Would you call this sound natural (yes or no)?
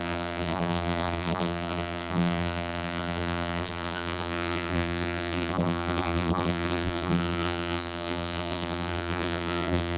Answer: no